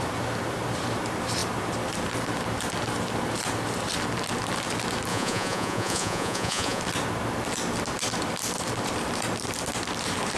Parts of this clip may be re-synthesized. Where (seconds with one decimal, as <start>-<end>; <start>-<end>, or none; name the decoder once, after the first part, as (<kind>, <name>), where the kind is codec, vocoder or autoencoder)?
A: 5.1-6.8 (vocoder, Vocos)